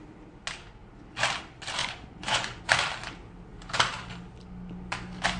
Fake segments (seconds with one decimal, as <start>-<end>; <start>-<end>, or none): 1.8-2.6